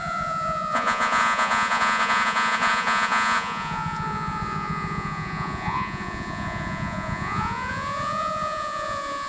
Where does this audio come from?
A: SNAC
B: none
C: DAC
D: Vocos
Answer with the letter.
D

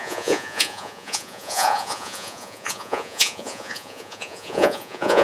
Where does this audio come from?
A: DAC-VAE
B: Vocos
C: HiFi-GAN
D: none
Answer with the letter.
B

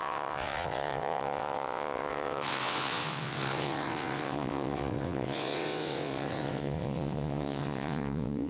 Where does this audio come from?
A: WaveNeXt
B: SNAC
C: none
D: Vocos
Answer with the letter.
A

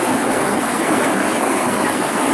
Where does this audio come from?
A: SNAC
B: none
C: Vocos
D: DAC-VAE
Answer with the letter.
A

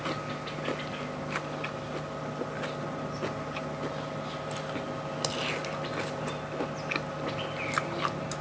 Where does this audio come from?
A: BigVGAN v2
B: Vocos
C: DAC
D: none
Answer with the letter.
D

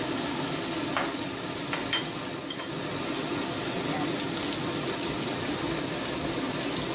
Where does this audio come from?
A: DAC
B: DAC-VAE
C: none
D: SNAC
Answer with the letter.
C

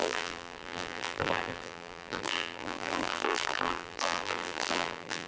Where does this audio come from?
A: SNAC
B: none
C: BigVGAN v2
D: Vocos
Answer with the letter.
C